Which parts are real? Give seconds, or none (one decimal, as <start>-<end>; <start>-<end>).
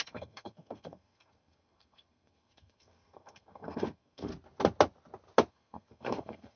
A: 4.3-5.5